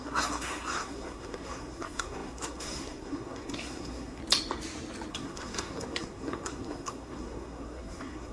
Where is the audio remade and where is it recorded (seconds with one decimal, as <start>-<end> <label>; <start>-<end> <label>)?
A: 0.0-4.2 remade; 4.2-5.1 recorded; 5.1-8.3 remade